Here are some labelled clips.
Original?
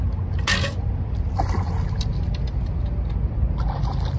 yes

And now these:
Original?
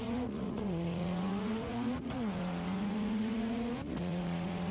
no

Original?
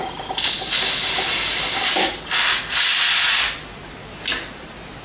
yes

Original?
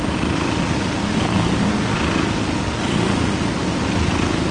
yes